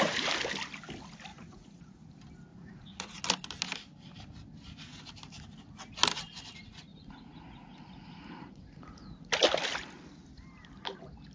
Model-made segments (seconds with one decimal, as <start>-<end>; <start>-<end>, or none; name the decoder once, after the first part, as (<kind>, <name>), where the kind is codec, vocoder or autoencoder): 1.3-2.1 (vocoder, Vocos); 2.5-3.2; 6.9-9.3